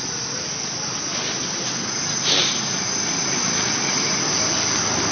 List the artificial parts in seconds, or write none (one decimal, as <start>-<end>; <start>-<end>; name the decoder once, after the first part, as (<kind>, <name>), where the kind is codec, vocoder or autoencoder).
none